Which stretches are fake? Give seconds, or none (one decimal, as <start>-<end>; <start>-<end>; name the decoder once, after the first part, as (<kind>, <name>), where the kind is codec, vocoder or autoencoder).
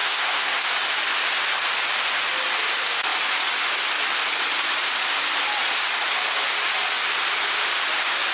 0.0-0.7 (codec, SNAC)